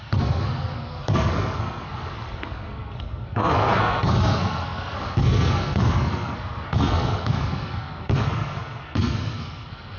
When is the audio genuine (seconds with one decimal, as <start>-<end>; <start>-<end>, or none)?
none